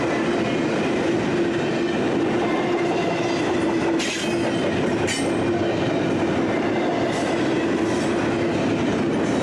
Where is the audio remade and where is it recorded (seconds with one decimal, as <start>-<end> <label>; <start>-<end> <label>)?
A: 0.0-9.4 recorded